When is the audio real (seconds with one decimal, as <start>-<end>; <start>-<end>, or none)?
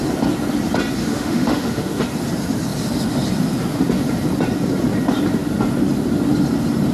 0.0-1.0; 2.0-6.9